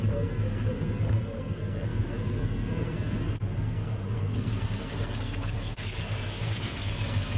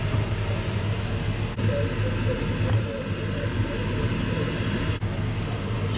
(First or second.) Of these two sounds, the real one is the second